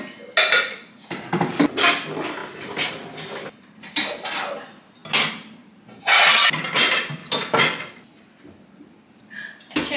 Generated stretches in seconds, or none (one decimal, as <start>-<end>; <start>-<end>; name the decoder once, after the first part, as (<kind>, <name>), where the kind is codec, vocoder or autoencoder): none